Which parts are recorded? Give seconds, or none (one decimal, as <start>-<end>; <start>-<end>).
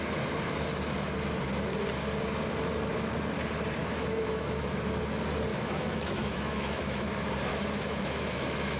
0.0-3.8; 5.0-5.5; 7.1-7.5